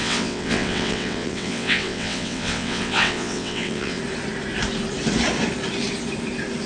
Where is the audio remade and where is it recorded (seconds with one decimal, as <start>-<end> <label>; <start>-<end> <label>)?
0.0-4.0 remade; 4.0-6.7 recorded